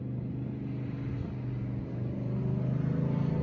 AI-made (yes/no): no